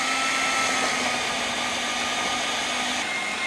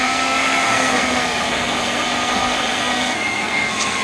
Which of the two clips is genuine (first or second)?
first